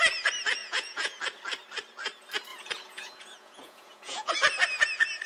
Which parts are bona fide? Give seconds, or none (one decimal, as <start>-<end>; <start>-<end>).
0.0-0.6; 1.2-2.5; 4.3-5.3